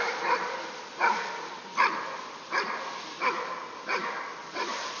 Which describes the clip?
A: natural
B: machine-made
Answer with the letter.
A